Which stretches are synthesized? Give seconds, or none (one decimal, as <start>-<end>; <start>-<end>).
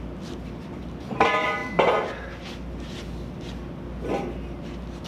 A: none